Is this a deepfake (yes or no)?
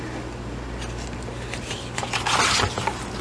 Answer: no